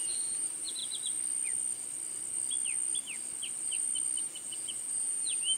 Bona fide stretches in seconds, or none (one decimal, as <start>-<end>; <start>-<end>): 0.8-4.2